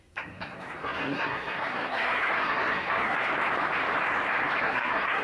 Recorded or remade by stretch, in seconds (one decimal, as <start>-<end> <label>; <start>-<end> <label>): 0.0-3.3 remade; 3.3-4.6 recorded; 4.6-5.2 remade